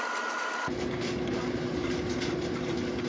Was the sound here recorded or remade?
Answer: recorded